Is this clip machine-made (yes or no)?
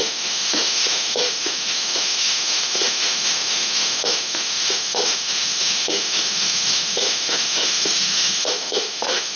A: yes